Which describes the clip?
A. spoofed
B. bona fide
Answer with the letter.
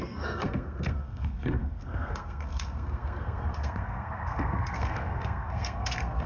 A